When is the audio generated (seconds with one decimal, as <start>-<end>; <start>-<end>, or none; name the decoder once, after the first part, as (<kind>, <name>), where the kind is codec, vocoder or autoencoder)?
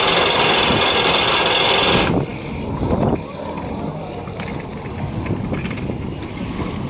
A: none